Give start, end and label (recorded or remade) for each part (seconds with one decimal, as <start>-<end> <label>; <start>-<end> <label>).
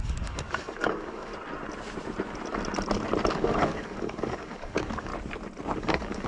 0.0-1.3 remade; 1.3-3.3 recorded; 3.3-5.1 remade; 5.1-5.8 recorded; 5.8-6.3 remade